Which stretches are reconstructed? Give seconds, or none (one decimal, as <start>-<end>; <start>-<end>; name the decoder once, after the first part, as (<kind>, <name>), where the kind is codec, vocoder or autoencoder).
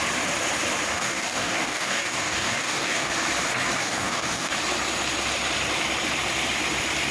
0.9-3.1 (codec, DAC); 3.8-4.5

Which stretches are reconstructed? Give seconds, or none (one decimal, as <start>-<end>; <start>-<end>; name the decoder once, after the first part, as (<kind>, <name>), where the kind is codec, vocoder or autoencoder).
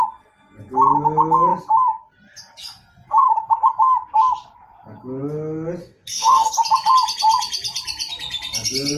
5.8-6.5 (codec, DAC)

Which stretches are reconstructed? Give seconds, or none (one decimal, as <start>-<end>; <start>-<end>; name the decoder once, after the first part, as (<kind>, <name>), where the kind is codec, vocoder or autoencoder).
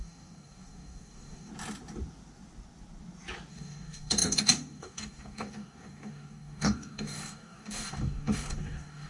0.0-1.5 (codec, DAC); 3.5-9.1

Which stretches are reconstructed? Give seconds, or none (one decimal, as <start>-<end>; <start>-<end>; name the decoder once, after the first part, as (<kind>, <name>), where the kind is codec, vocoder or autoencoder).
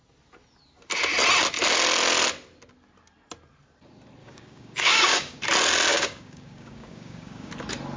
4.2-5.4 (codec, DAC); 5.9-7.5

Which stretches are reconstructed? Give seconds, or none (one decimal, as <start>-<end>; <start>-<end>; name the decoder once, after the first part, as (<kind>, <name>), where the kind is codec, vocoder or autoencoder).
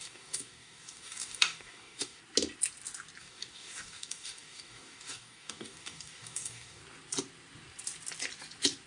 0.0-2.2 (codec, DAC); 3.2-6.8